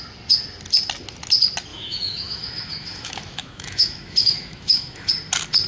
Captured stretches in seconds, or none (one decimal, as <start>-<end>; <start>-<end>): 0.0-1.7; 5.1-5.7